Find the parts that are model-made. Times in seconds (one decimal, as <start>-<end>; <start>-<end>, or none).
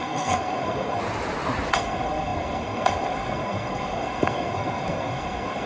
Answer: 0.0-1.0; 1.7-5.7